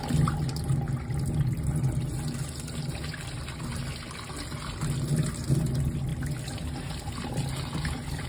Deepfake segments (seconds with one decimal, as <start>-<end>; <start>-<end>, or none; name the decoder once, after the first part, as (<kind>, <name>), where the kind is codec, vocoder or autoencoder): 6.1-7.3 (vocoder, BigVGAN v2)